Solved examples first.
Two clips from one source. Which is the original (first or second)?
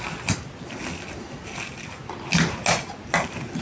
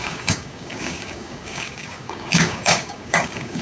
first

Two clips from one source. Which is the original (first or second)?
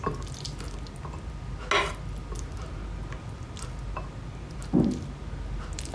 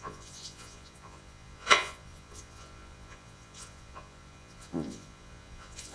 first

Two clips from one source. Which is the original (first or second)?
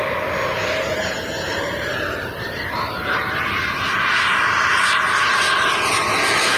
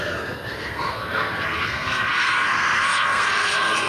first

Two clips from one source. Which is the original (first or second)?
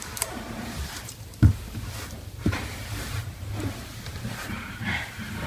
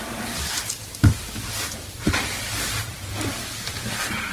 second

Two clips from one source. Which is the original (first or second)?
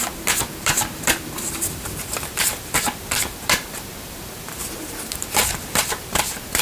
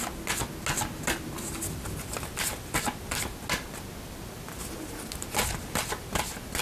second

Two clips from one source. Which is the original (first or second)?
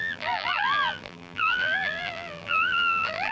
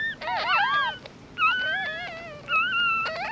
second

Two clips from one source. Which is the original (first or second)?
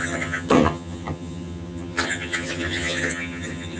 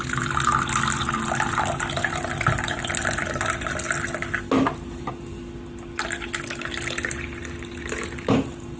second